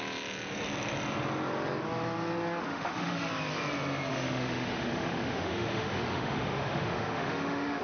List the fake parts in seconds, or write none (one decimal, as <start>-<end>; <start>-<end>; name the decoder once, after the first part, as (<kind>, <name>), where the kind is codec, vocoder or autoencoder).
2.7-3.3 (autoencoder, DAC-VAE); 4.1-7.8